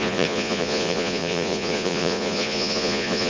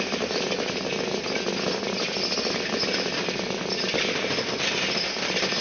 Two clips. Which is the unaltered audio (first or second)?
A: second